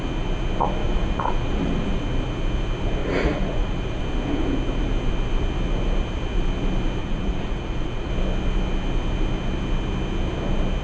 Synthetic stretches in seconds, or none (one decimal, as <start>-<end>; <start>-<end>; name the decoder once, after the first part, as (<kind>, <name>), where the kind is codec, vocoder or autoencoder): 0.8-2.0 (vocoder, Vocos); 3.0-4.0; 7.0-8.1